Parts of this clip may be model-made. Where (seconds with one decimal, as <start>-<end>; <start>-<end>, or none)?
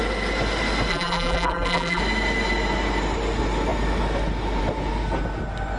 0.9-2.0